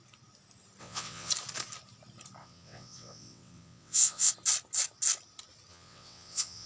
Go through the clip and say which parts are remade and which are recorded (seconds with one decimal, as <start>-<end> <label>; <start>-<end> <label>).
0.0-0.8 recorded; 0.8-1.3 remade; 1.3-2.4 recorded; 2.4-4.3 remade; 4.3-5.7 recorded; 5.7-6.7 remade